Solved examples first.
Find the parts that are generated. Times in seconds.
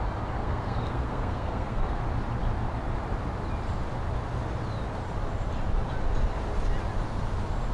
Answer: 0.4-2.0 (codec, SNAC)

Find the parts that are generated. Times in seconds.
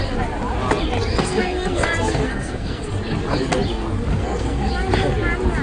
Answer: 1.1-2.9 (codec, SNAC); 4.1-4.7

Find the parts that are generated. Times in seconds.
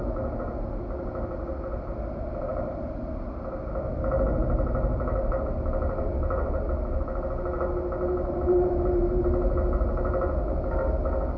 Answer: none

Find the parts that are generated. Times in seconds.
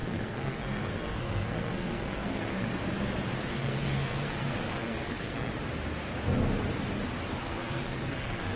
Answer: 0.0-2.7 (codec, SNAC); 3.5-5.5; 7.4-8.6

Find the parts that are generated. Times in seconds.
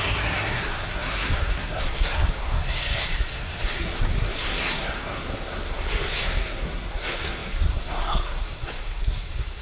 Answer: 0.0-9.6 (codec, SNAC)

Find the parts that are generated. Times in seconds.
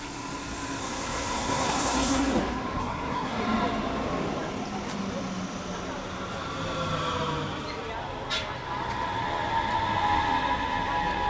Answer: 0.8-2.4 (codec, SNAC); 2.8-3.4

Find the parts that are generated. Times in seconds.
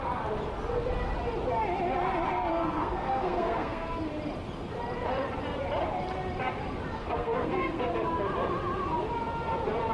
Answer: 2.5-4.1 (codec, SNAC); 7.0-7.9